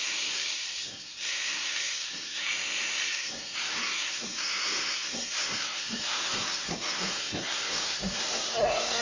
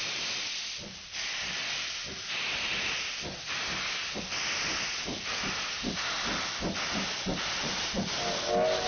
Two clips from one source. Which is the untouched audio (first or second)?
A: second